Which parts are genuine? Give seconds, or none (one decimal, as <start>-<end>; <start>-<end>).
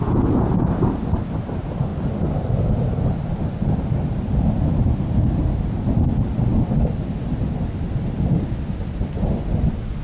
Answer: 0.0-10.0